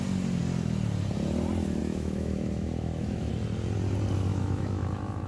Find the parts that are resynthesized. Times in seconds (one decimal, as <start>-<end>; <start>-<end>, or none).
1.8-3.3; 4.3-5.3